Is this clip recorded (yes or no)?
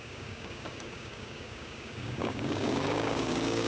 no